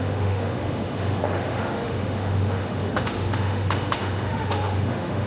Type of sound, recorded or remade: remade